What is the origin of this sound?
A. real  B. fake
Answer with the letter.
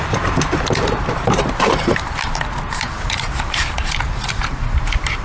B